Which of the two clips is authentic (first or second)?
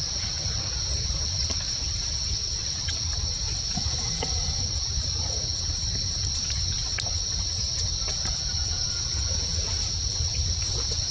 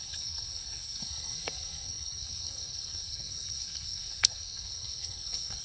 first